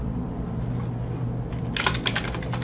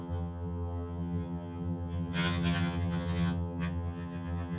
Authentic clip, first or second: first